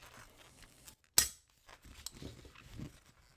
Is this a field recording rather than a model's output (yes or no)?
yes